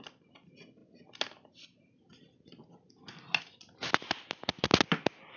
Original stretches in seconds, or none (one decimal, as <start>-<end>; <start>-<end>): 0.0-5.4